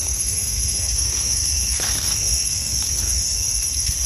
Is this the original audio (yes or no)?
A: no